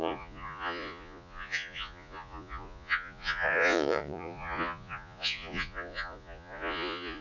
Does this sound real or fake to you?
fake